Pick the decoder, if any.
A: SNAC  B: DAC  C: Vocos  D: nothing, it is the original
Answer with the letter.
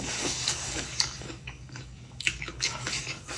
B